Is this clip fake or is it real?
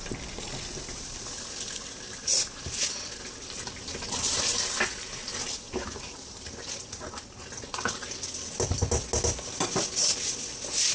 real